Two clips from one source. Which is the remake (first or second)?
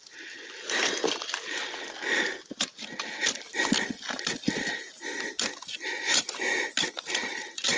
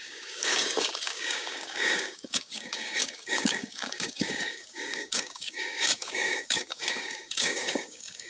second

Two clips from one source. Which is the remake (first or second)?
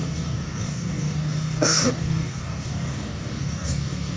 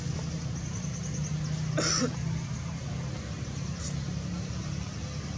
first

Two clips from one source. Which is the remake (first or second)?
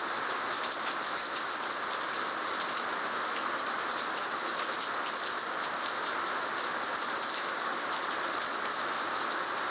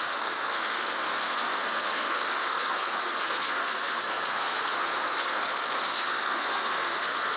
second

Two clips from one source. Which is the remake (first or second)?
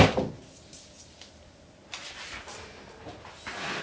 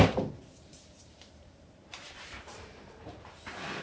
second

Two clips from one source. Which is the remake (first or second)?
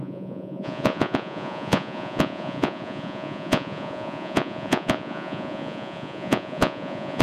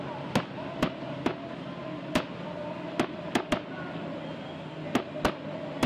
first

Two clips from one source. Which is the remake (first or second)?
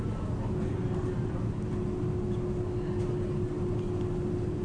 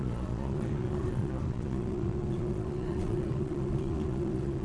second